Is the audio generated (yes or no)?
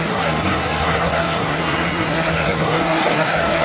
yes